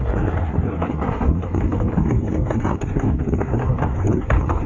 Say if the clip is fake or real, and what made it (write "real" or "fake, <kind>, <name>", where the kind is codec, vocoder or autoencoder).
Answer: fake, codec, SNAC